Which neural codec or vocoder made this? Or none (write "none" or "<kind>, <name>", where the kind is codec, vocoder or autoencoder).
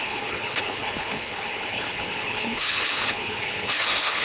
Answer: codec, HILCodec